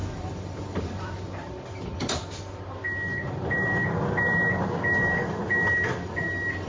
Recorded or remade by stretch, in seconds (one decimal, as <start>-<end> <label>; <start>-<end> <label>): 0.0-6.7 recorded